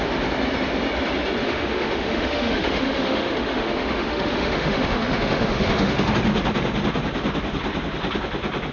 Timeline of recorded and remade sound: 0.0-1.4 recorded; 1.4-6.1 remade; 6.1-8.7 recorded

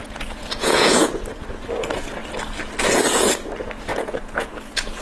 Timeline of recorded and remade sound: 0.0-1.2 remade; 1.2-3.9 recorded; 3.9-4.5 remade; 4.5-5.0 recorded

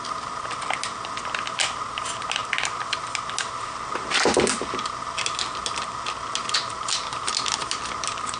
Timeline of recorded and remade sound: 0.0-8.4 recorded

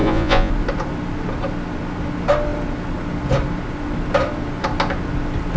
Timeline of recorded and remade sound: 0.0-0.5 remade; 0.5-5.6 recorded

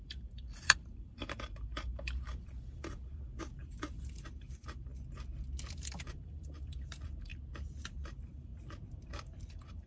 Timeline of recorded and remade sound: 0.0-4.9 remade; 4.9-5.7 recorded; 5.7-7.3 remade; 7.3-7.9 recorded; 7.9-8.5 remade; 8.5-9.5 recorded; 9.5-9.9 remade

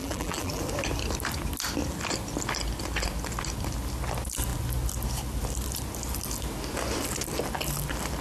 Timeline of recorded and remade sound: 0.0-0.6 remade; 0.6-8.2 recorded

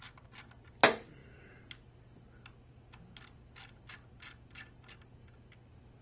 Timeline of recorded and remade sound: 0.0-6.0 recorded